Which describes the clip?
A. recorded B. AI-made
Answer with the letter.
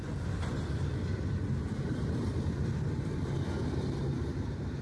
B